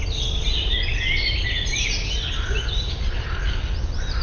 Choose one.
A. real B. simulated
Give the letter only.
A